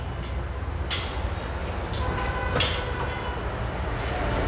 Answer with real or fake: real